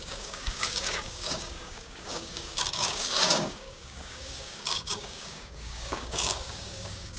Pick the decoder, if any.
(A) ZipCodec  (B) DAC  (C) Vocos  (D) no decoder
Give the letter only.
B